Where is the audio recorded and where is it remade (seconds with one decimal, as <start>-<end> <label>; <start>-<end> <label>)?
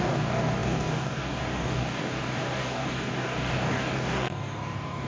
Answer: 0.0-5.1 remade